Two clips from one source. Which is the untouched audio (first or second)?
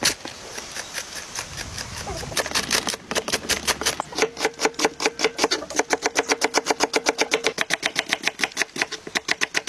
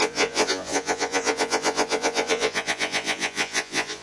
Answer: first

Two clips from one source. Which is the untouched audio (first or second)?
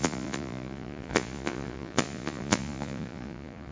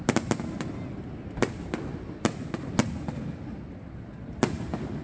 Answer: second